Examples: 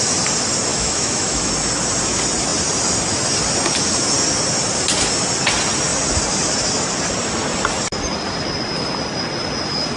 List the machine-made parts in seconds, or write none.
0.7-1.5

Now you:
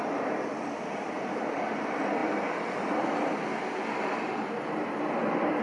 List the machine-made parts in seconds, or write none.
none

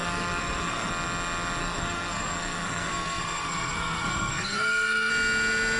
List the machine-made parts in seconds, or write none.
0.0-0.9; 1.6-5.1

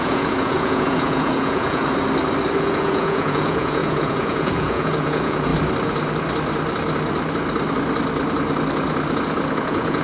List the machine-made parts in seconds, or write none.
0.0-1.8; 2.6-5.5; 9.6-10.0

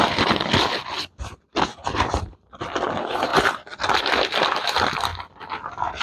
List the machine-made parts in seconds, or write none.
none

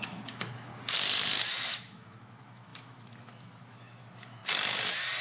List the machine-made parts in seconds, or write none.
0.0-0.7; 1.5-4.4

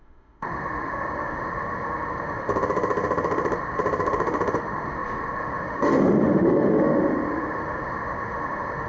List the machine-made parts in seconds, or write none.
0.0-8.9

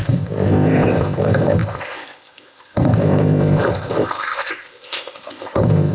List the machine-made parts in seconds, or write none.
0.0-5.9